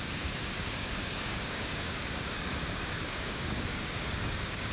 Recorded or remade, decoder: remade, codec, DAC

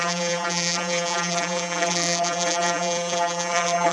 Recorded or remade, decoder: remade, vocoder, BigVGAN v2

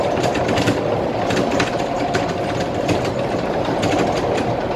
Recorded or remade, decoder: recorded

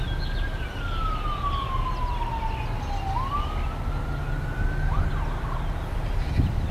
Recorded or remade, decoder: recorded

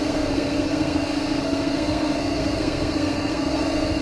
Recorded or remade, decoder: remade, codec, SNAC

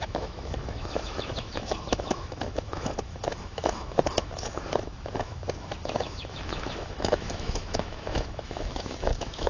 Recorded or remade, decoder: remade, autoencoder, DAC-VAE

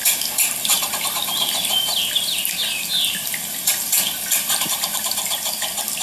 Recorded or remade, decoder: recorded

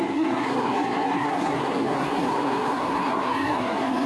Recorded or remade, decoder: remade, codec, SNAC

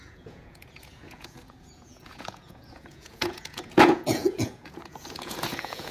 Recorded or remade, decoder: remade, vocoder, Vocos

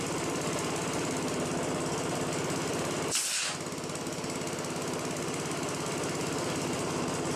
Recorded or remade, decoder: recorded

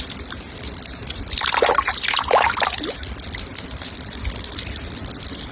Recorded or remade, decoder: recorded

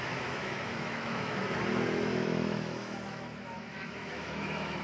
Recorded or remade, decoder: remade, autoencoder, DAC-VAE